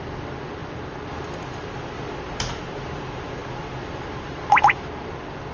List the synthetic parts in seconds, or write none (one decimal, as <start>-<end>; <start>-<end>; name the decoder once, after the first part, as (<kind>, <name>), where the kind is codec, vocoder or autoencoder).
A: none